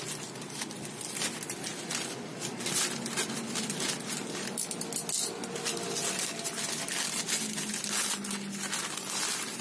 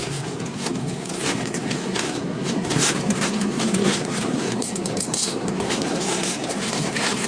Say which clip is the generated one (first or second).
second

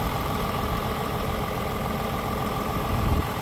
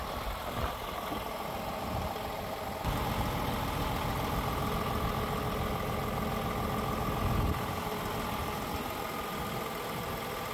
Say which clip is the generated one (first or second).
first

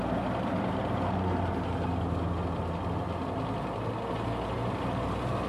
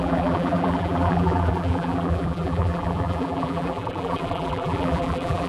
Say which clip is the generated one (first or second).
second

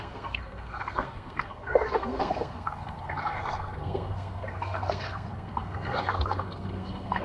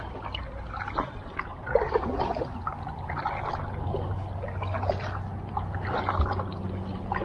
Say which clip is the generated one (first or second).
first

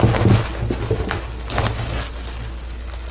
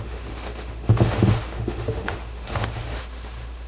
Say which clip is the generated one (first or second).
second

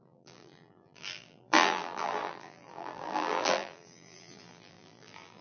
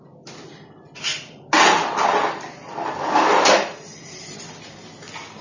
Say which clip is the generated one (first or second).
first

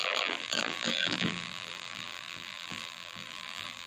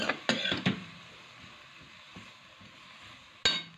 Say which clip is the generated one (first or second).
first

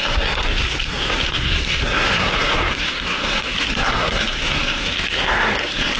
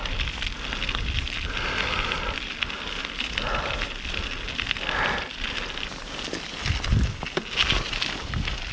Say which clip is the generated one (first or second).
first